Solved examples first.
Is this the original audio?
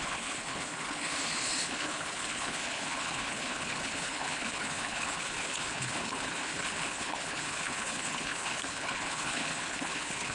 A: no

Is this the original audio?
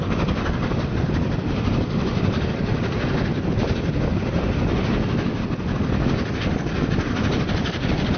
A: yes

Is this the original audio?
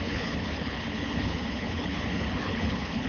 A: no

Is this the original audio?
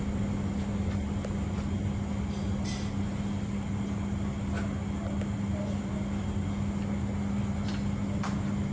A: yes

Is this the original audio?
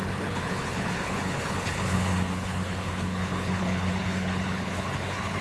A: no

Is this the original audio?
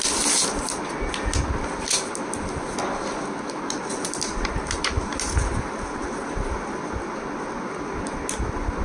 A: yes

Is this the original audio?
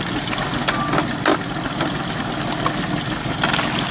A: yes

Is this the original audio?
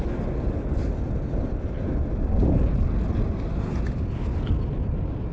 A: yes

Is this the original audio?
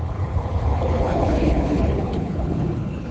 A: no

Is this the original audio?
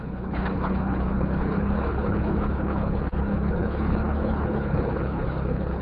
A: no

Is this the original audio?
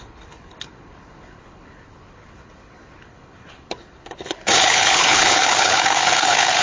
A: no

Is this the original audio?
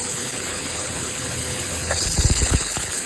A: no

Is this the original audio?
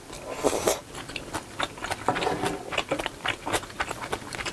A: yes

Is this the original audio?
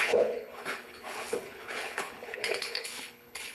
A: no